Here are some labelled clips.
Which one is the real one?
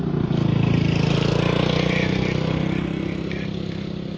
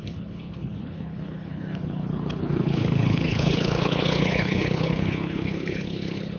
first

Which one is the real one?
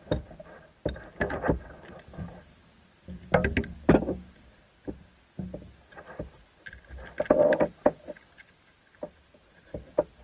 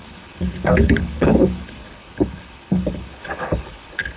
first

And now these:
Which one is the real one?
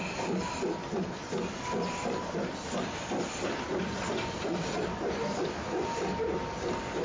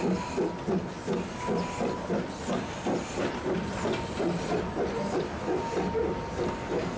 second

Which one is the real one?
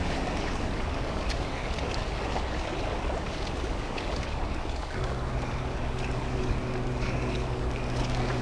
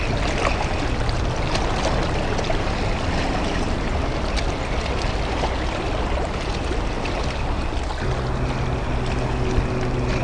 second